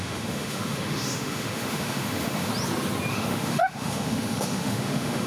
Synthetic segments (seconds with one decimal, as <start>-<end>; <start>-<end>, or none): 0.0-2.5; 3.1-5.3